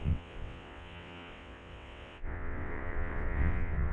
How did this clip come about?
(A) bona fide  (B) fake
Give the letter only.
B